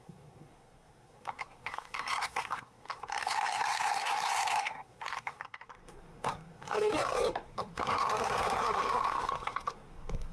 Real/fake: fake